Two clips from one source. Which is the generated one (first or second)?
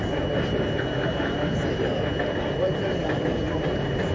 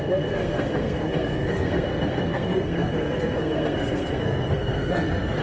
second